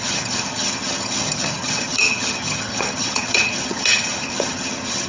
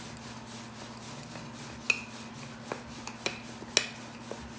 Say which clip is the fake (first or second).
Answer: first